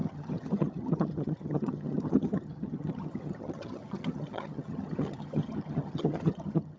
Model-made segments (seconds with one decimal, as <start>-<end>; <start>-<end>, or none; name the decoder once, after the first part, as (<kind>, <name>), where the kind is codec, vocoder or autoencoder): 0.0-6.8 (vocoder, HiFi-GAN)